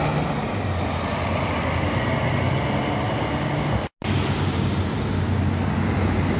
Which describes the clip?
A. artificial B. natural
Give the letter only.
B